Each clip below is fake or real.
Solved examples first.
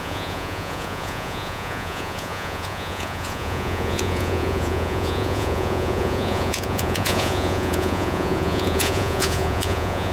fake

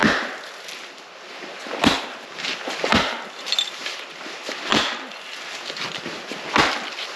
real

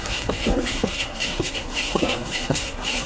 fake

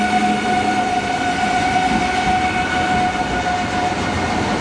real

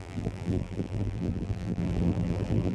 fake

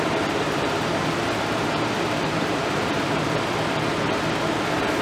fake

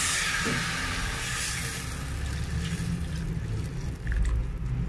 real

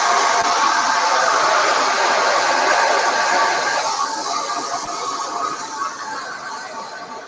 real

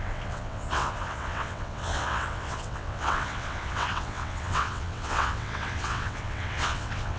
fake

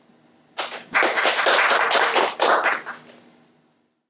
real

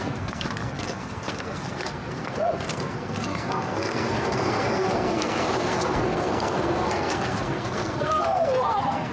fake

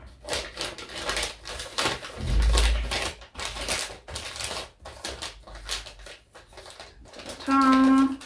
real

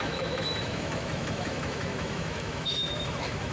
fake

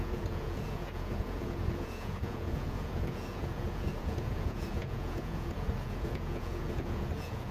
fake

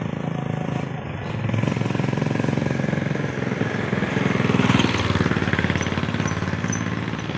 real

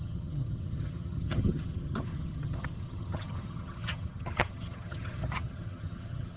fake